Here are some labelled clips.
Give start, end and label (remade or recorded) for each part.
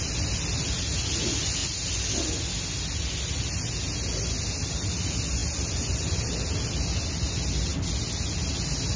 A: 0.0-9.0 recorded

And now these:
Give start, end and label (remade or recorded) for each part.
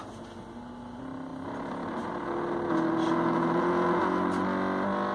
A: 0.0-5.1 recorded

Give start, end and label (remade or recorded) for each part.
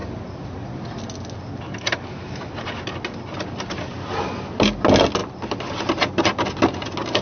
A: 0.0-7.2 recorded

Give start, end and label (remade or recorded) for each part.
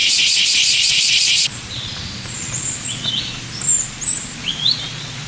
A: 0.0-3.2 remade; 3.2-4.4 recorded; 4.4-5.3 remade